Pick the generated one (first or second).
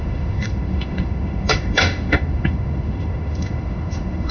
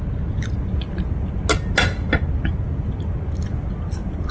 first